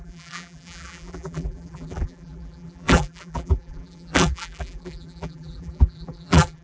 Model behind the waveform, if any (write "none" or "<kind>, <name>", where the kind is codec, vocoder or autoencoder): vocoder, BigVGAN v2